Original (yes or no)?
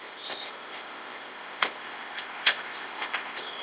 no